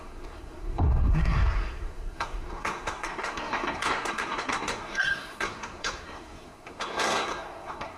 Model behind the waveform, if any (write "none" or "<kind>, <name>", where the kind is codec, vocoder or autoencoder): codec, SNAC